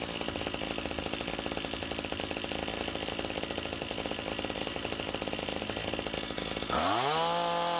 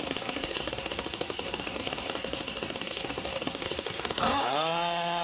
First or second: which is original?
first